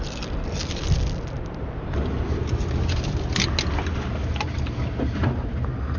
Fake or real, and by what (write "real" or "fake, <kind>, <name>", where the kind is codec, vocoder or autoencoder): real